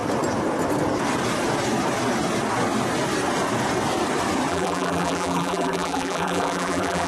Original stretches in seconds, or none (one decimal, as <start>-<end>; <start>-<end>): 0.0-4.5

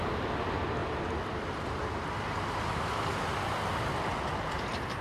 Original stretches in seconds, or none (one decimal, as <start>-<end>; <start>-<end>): 0.0-5.0